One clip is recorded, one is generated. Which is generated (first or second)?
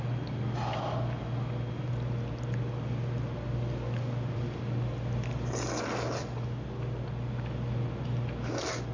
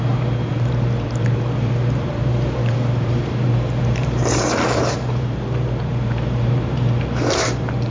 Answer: second